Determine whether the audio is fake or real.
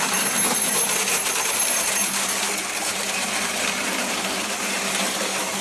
fake